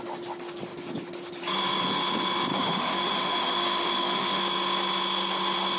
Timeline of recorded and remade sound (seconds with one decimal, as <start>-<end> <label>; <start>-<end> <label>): 0.0-2.5 recorded; 2.5-4.4 remade; 4.4-5.8 recorded